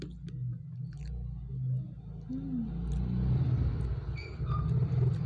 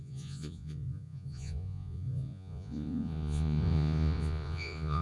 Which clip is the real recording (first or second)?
first